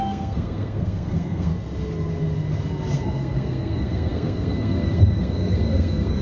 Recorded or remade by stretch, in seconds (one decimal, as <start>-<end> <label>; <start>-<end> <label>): 0.0-1.5 remade; 1.5-2.9 recorded; 2.9-6.2 remade